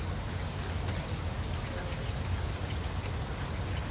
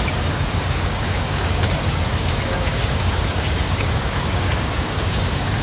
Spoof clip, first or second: second